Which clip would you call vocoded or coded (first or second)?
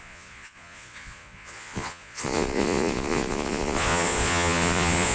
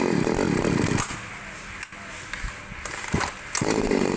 first